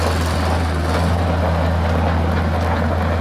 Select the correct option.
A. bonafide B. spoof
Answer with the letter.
A